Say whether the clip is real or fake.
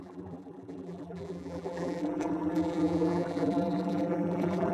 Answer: fake